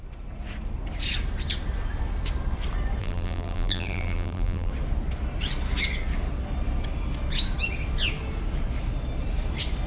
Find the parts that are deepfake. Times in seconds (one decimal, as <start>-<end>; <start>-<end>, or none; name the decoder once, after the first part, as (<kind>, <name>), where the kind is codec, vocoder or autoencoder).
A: 3.0-4.7 (vocoder, BigVGAN v2)